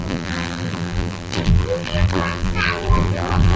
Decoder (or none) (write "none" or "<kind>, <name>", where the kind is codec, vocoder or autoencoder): vocoder, BigVGAN v2